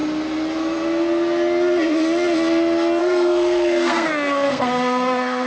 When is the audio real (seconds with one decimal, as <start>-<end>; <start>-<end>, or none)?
0.0-3.0